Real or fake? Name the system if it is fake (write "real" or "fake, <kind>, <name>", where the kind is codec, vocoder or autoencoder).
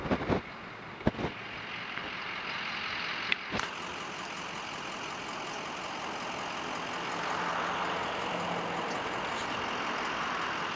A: real